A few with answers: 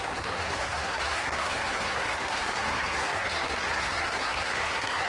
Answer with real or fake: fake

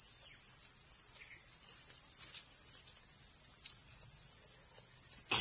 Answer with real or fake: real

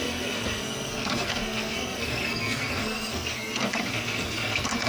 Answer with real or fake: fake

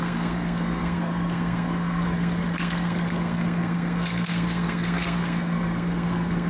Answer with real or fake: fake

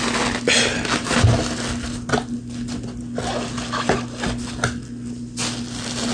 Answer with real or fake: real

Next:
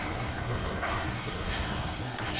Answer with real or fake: fake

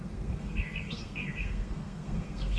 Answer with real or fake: fake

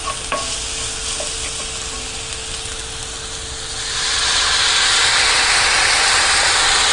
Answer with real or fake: real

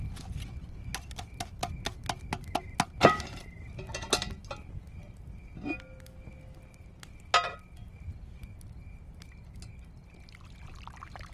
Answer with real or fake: real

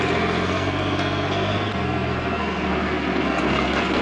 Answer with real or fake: fake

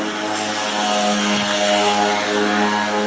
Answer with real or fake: real